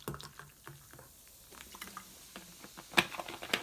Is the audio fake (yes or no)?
no